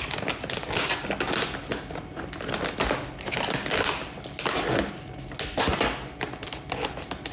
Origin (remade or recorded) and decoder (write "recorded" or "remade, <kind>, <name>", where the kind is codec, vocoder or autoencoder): recorded